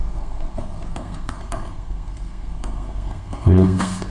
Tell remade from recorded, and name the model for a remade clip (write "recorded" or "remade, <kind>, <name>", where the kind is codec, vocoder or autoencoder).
remade, codec, SNAC